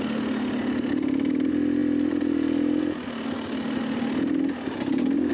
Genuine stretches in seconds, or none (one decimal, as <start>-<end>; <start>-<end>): 0.0-5.3